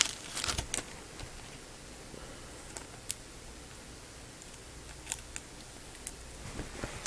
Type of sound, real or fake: real